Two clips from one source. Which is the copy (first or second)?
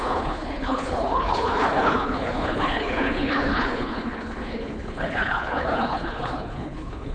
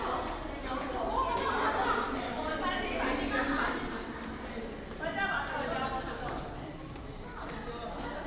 first